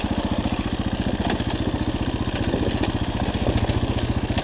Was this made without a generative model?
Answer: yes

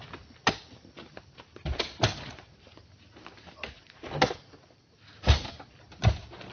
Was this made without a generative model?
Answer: yes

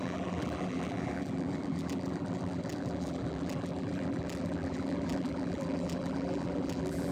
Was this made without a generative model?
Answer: no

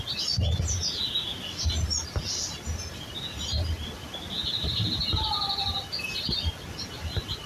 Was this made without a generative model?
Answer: yes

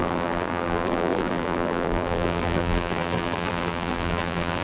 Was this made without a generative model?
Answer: no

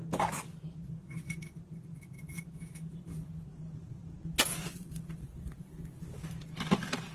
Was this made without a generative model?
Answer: yes